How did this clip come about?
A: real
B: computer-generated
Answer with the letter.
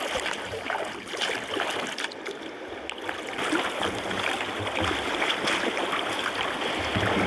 A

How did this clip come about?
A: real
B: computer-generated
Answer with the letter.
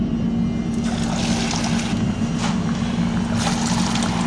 A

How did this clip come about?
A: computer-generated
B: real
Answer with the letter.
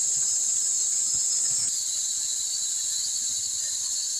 B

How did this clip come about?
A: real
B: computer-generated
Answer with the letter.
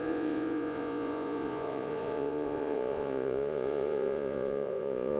B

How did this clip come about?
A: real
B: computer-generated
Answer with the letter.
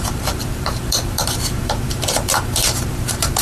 B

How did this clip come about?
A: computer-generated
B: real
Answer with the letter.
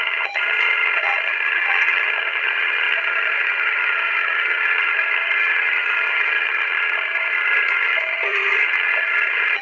A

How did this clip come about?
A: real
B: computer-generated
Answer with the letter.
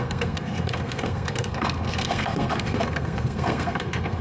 B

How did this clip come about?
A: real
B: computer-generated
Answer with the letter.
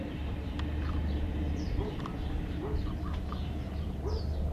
B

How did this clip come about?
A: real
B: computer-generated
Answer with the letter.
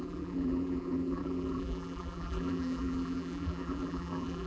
B